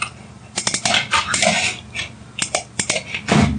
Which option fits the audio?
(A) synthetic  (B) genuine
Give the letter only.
B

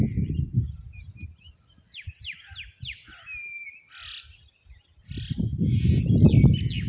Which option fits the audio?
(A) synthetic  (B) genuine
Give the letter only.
B